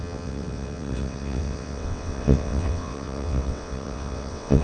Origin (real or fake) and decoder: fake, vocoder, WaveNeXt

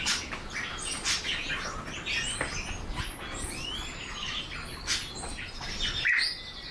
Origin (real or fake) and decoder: real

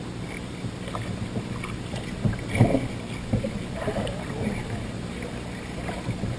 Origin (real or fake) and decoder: real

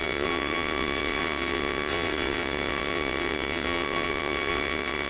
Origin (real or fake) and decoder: fake, vocoder, WaveNeXt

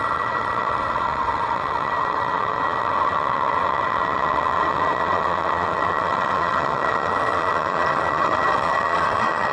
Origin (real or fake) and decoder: fake, vocoder, WaveNeXt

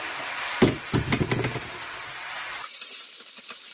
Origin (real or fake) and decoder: real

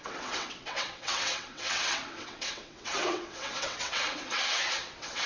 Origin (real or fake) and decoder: fake, vocoder, WaveNeXt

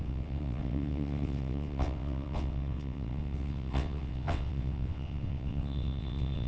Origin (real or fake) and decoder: fake, vocoder, WaveNeXt